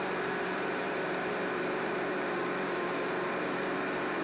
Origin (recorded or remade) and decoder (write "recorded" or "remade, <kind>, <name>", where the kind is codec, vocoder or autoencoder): remade, vocoder, BigVGAN v2